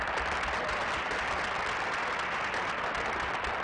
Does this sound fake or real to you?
real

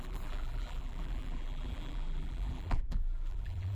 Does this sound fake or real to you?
fake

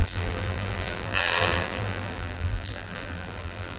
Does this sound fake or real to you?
fake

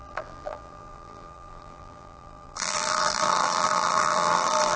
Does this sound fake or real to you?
fake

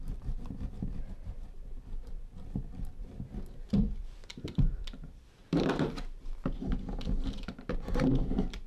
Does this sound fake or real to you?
fake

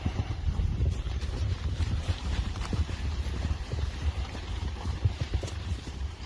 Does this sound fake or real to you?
fake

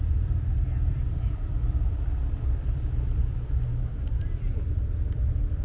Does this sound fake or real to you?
fake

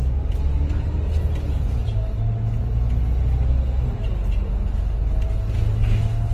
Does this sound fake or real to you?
real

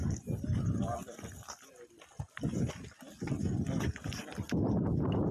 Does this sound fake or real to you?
real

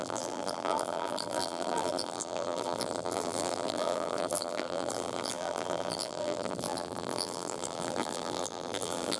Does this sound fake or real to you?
fake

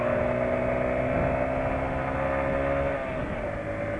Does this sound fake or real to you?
real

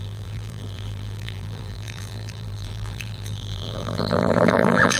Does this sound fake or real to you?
fake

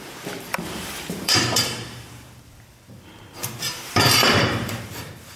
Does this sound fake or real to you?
fake